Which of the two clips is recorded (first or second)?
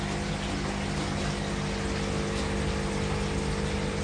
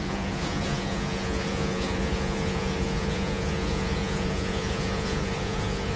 first